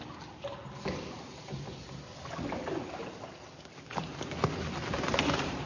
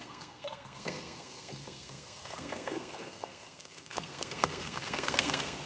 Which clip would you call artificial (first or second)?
second